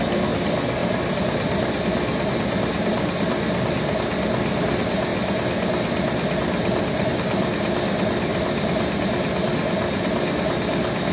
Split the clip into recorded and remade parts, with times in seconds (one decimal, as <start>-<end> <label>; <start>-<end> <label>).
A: 0.0-11.1 recorded

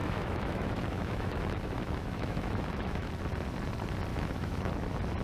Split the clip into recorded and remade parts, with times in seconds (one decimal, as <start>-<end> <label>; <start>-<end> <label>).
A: 0.0-3.1 remade; 3.1-4.1 recorded; 4.1-4.7 remade; 4.7-5.2 recorded